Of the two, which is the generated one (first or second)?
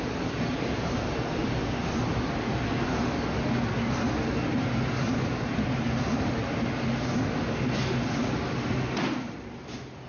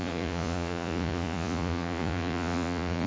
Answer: second